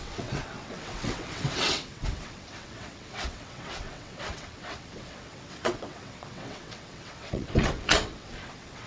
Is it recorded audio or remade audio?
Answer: remade